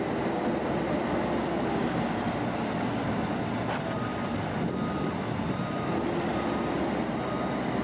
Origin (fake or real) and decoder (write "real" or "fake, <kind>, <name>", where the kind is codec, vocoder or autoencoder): real